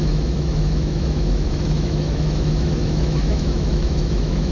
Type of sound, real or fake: fake